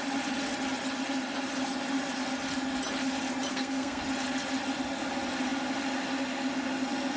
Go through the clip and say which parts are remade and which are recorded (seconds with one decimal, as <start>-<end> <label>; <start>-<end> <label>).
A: 0.0-3.5 recorded; 3.5-4.0 remade; 4.0-7.2 recorded